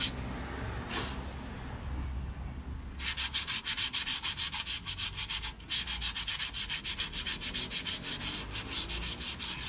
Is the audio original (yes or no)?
yes